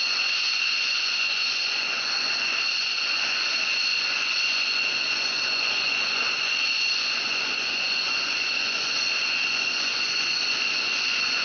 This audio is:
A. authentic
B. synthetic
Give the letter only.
B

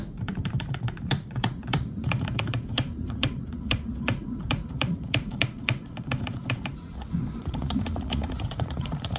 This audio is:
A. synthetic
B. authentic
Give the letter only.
A